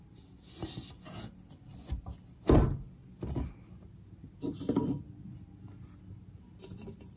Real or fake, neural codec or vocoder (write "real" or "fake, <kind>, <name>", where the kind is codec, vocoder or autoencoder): real